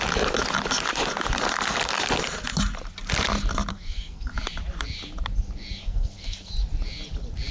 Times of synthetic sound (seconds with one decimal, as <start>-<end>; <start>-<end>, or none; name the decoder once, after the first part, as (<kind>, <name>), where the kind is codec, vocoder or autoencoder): 3.7-4.3 (codec, SNAC); 5.8-6.5